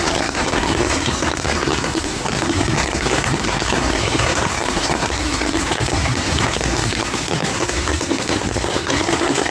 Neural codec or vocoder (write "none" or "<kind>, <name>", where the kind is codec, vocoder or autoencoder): codec, SNAC